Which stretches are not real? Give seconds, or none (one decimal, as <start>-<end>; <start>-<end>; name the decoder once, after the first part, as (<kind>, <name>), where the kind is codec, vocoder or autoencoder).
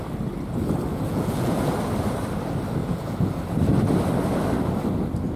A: 0.9-1.7 (vocoder, Vocos); 2.8-3.3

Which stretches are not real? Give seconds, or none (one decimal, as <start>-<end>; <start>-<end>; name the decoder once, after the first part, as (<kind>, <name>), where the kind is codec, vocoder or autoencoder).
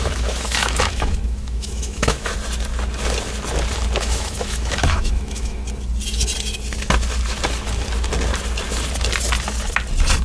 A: 0.0-2.3 (autoencoder, DAC-VAE); 4.0-5.6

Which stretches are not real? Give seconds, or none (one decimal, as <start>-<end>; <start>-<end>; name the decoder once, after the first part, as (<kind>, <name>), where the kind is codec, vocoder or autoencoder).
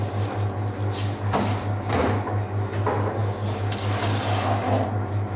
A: none